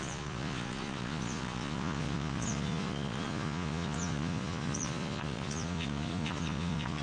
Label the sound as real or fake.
fake